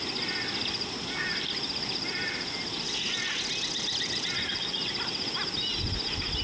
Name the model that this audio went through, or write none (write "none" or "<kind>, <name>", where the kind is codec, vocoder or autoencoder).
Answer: none